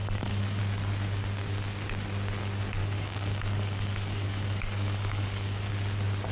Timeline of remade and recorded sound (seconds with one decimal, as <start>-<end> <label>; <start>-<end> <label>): 0.0-0.6 remade; 0.6-2.8 recorded; 2.8-5.7 remade; 5.7-6.3 recorded